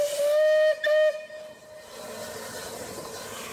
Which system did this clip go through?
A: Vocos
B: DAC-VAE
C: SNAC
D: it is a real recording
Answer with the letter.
D